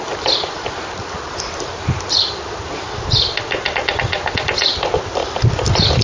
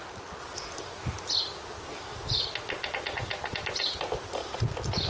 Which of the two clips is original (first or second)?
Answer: second